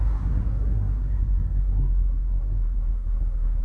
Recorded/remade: remade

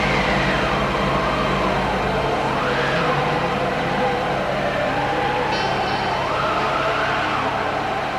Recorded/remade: recorded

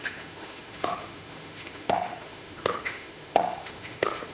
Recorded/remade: remade